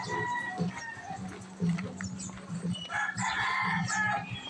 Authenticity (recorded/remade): recorded